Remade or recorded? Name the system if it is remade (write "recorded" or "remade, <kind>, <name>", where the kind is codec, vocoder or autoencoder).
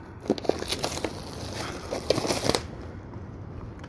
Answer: recorded